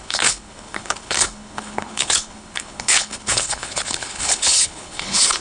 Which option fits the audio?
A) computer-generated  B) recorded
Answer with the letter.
A